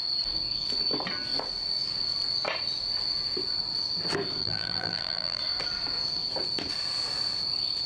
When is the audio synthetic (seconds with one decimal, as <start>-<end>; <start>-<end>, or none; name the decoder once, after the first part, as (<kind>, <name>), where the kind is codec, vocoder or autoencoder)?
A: 4.4-5.4 (vocoder, BigVGAN v2)